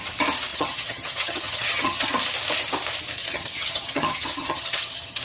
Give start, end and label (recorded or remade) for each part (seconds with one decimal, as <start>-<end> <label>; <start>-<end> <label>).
0.0-0.5 recorded; 0.5-2.1 remade; 2.1-3.2 recorded; 3.2-5.2 remade